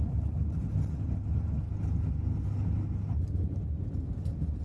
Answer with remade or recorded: recorded